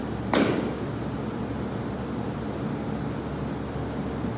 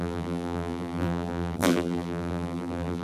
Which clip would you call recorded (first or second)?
first